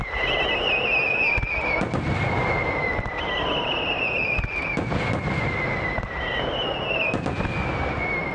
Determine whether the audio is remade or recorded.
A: recorded